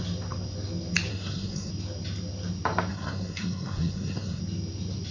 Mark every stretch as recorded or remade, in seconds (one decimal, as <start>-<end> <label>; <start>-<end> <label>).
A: 0.0-1.1 recorded; 1.1-1.7 remade; 1.7-2.9 recorded; 2.9-4.4 remade; 4.4-5.1 recorded